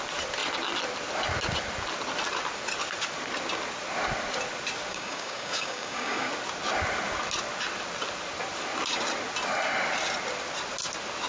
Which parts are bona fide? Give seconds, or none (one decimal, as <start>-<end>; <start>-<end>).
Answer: 0.0-4.9; 6.3-11.3